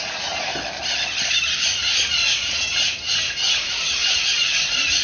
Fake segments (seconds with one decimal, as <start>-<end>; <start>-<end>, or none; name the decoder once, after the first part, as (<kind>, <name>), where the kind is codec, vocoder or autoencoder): 0.0-0.5 (vocoder, Vocos); 3.5-4.0